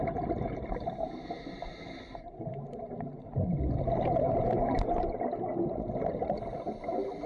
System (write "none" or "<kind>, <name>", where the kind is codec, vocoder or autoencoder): none